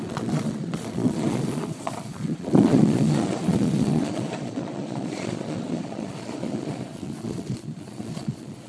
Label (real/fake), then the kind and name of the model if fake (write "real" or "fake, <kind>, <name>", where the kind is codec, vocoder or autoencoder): fake, vocoder, Vocos